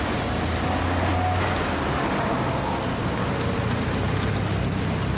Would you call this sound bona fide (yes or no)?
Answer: yes